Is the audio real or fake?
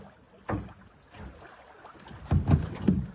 real